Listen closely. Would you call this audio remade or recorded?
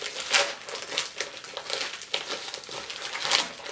recorded